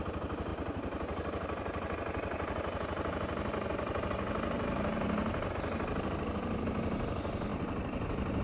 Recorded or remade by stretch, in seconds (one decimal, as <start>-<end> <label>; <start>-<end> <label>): 0.0-8.4 recorded

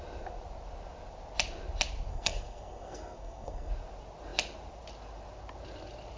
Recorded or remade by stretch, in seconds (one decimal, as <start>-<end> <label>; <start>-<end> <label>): 0.0-2.1 recorded; 2.1-3.7 remade; 3.7-6.2 recorded

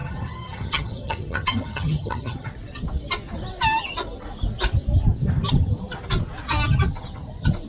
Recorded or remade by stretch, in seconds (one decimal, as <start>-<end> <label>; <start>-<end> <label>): 0.0-2.5 remade; 2.5-7.7 recorded

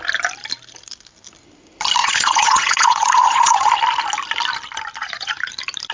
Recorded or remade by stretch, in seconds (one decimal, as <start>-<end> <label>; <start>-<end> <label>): 0.0-2.0 recorded; 2.0-3.7 remade; 3.7-5.0 recorded; 5.0-5.5 remade; 5.5-5.9 recorded

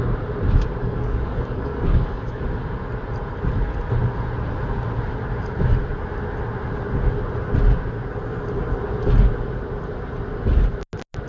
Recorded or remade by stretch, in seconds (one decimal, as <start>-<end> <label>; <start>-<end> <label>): 0.0-0.8 recorded; 0.8-2.4 remade; 2.4-11.3 recorded

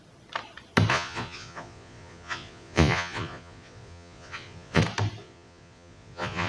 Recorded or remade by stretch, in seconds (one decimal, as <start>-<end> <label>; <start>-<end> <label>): 0.0-0.9 recorded; 0.9-4.8 remade; 4.8-5.2 recorded; 5.2-6.5 remade

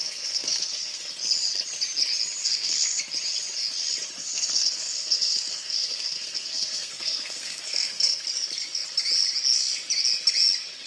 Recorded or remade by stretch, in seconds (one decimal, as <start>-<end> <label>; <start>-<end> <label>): 0.0-1.0 remade; 1.0-2.4 recorded; 2.4-3.0 remade; 3.0-4.2 recorded; 4.2-8.2 remade; 8.2-10.9 recorded

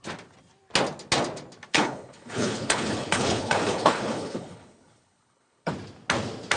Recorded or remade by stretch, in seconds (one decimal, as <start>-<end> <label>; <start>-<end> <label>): 0.0-1.7 recorded; 1.7-5.7 remade; 5.7-6.6 recorded